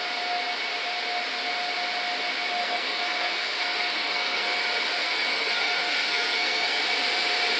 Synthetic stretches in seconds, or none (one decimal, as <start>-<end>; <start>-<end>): 2.6-4.6; 5.0-6.8